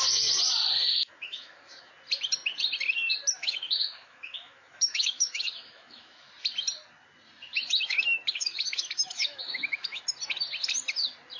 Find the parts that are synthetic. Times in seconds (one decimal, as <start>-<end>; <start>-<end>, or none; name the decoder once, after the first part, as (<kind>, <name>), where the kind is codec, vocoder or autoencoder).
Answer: 0.9-1.9 (autoencoder, DAC-VAE); 3.4-6.3; 7.5-10.0